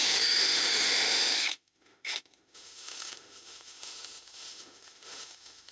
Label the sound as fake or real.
fake